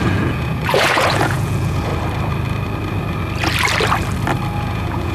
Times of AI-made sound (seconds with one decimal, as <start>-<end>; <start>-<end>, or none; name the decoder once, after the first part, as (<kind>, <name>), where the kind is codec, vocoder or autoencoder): 0.0-1.9 (vocoder, Vocos); 4.6-5.1